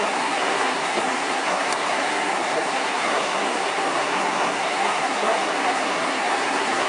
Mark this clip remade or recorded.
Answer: remade